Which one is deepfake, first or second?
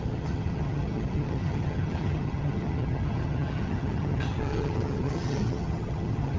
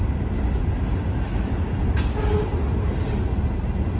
first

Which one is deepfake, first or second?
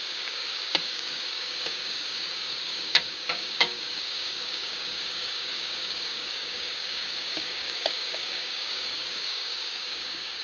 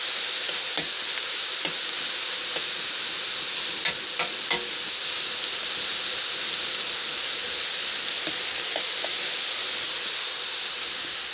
first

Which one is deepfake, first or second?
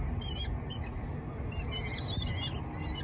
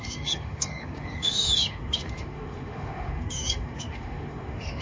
second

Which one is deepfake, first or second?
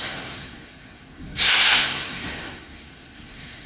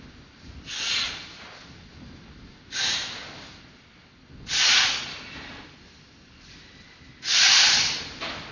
first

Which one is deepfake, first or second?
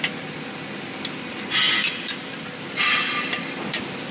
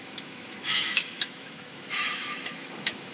second